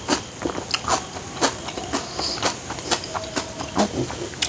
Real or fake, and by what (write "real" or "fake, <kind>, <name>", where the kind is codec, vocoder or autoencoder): real